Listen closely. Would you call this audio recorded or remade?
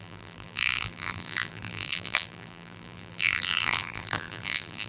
remade